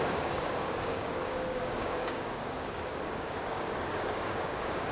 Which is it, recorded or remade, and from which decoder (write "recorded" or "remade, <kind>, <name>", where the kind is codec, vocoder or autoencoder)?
remade, codec, DAC